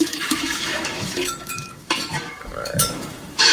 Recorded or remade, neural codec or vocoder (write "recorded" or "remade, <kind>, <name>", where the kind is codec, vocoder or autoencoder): remade, autoencoder, DAC-VAE